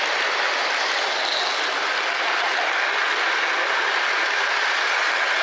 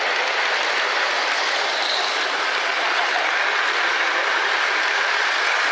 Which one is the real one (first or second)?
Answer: first